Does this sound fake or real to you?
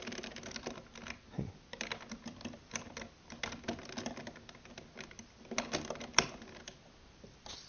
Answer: real